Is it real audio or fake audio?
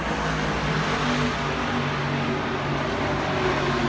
real